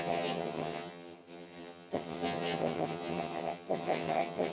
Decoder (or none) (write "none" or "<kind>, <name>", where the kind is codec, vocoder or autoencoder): vocoder, HiFi-GAN